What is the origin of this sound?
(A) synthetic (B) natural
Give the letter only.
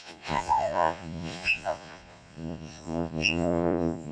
A